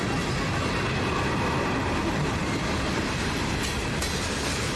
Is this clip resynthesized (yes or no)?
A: no